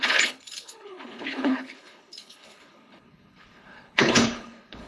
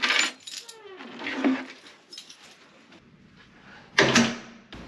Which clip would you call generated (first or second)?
first